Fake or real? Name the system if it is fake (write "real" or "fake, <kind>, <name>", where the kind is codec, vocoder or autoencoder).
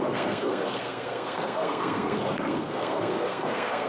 fake, codec, SNAC